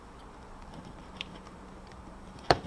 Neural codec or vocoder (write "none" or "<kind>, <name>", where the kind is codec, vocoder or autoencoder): vocoder, BigVGAN v2